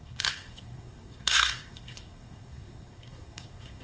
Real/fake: fake